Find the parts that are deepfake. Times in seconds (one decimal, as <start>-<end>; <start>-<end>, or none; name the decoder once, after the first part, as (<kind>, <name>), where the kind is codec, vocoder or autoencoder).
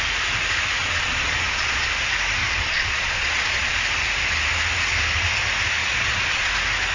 0.8-1.9 (vocoder, Vocos); 2.4-3.7; 5.8-6.5